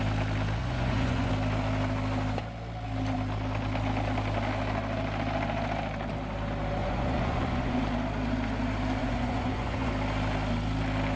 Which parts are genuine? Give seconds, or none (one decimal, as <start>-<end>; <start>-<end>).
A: 0.0-0.6; 1.3-6.8; 7.8-9.0; 9.9-11.2